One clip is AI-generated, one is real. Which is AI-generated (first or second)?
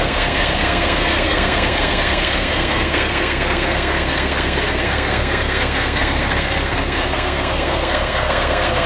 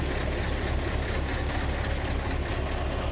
first